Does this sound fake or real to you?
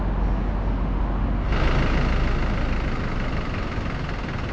real